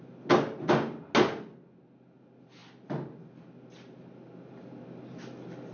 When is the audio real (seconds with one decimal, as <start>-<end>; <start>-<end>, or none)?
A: 0.0-5.7